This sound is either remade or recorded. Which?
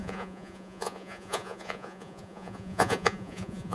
remade